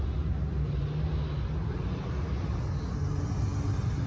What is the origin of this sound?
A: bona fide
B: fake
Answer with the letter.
A